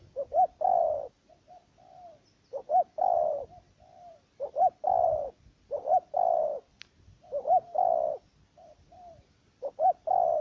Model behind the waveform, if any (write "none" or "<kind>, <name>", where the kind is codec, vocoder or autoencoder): none